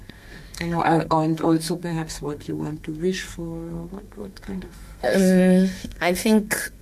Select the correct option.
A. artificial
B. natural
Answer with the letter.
A